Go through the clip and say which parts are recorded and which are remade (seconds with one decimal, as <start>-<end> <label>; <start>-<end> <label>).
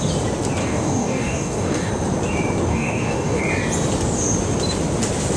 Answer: 0.0-0.6 recorded; 0.6-1.9 remade; 1.9-2.7 recorded; 2.7-3.4 remade; 3.4-5.4 recorded